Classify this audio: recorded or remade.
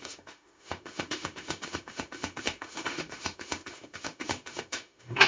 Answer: remade